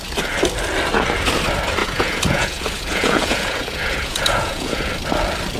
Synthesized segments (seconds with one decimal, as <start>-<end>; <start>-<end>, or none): 1.8-4.9